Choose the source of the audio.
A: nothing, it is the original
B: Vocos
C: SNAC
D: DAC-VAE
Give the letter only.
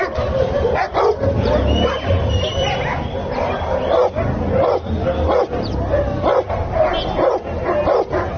A